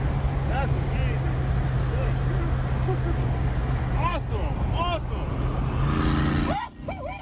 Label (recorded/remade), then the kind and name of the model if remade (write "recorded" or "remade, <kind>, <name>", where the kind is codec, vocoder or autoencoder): recorded